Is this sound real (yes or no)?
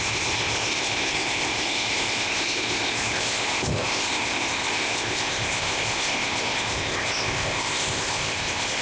no